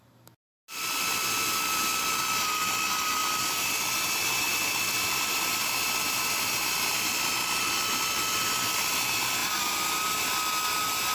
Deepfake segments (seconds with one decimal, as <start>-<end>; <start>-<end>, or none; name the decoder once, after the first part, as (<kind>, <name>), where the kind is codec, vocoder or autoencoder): 0.7-2.1 (vocoder, BigVGAN v2); 3.2-3.7; 4.5-7.3